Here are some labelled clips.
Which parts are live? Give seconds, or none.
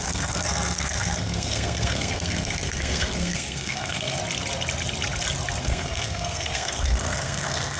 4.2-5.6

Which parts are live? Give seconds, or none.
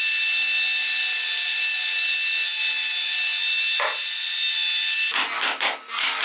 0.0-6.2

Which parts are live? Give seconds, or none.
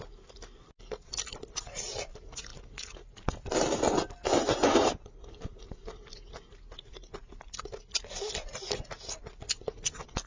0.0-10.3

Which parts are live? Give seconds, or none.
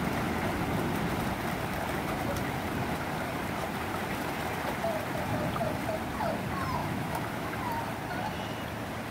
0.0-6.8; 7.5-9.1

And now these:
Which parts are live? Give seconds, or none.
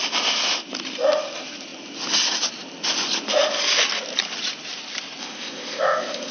0.0-5.2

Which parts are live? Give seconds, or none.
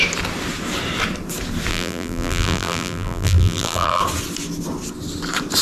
0.0-1.7; 4.0-5.6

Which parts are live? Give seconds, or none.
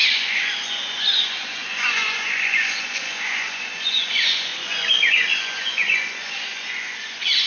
none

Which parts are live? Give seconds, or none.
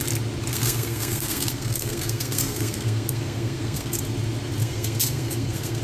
0.0-0.5; 4.0-4.6